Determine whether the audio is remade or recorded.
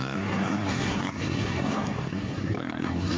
remade